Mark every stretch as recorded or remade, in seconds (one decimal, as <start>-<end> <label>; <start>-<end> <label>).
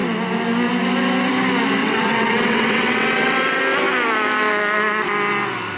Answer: 0.0-1.8 recorded; 1.8-3.6 remade; 3.6-5.8 recorded